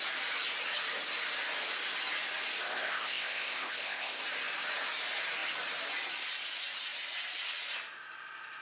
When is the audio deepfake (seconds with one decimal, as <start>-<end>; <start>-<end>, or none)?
2.7-4.2